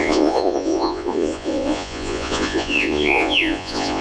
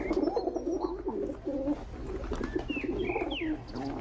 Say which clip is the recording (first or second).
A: second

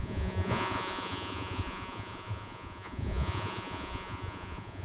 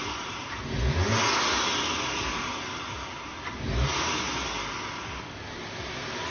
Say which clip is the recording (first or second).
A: second